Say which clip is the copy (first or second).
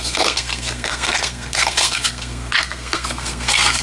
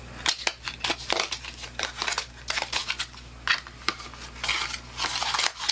first